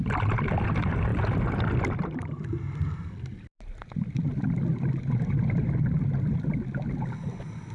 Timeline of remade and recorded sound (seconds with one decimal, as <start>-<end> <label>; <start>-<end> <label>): 0.0-7.7 recorded